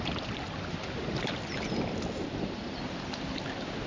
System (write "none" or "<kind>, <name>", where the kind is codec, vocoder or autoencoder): none